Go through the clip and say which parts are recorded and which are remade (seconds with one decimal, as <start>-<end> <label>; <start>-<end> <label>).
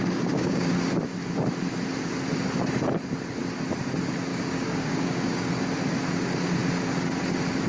0.0-0.7 remade; 0.7-4.3 recorded; 4.3-5.5 remade; 5.5-7.7 recorded